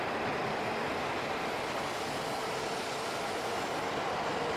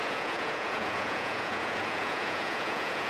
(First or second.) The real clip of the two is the first